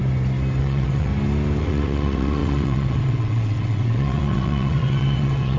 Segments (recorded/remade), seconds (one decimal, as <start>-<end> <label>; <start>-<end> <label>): 0.0-0.6 recorded; 0.6-1.1 remade; 1.1-1.6 recorded; 1.6-5.6 remade